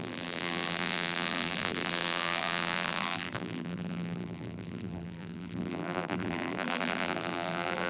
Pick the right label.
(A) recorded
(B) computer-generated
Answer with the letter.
B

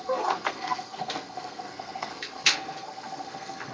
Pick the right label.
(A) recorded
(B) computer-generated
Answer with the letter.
B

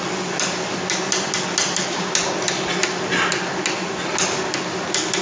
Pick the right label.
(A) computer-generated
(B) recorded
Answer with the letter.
B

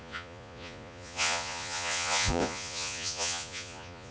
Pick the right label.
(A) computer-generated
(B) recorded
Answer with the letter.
A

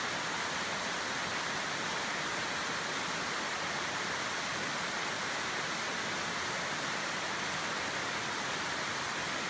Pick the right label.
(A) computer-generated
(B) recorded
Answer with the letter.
B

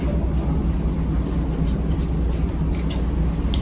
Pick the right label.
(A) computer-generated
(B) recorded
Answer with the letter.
B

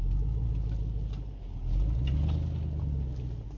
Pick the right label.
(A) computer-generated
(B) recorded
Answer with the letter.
B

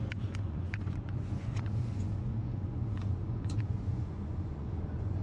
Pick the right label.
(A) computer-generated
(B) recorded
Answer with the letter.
A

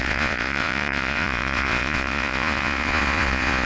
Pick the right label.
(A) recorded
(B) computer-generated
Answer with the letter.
B